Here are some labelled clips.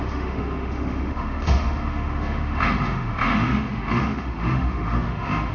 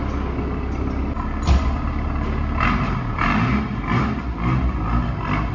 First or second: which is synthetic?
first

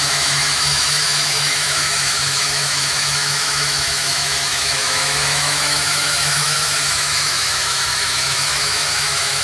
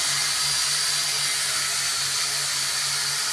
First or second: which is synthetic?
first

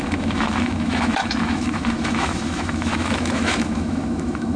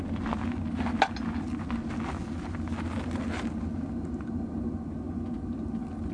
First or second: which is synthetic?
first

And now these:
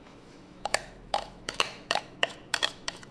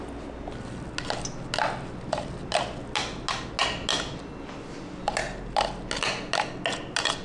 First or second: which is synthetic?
first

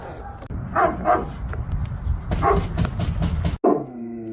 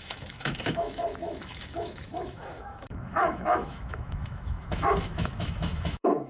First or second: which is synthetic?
second